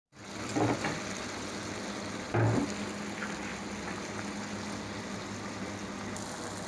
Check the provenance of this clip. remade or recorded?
recorded